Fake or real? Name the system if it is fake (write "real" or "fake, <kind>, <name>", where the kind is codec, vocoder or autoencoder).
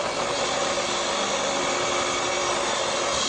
real